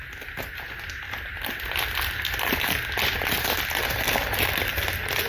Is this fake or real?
real